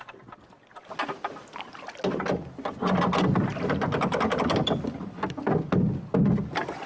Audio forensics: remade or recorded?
recorded